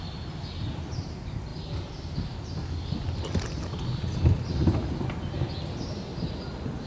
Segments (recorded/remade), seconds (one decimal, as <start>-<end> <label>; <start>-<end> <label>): 0.0-6.9 recorded